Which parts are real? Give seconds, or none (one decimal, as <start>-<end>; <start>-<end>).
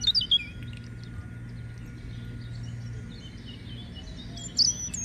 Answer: 0.0-5.0